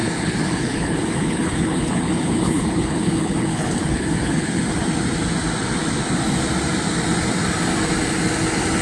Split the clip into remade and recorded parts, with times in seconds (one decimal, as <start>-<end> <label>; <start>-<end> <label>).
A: 0.0-4.6 remade; 4.6-8.8 recorded